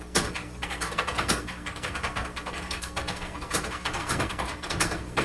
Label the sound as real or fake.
fake